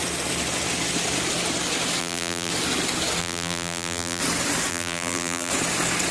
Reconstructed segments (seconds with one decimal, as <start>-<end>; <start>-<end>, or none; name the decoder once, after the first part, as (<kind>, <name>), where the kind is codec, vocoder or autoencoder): 2.0-2.5 (vocoder, BigVGAN v2); 3.2-4.2; 4.7-5.5